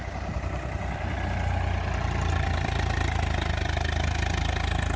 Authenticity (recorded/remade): recorded